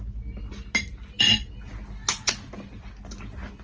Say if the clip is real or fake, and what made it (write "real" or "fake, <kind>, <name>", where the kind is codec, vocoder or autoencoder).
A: real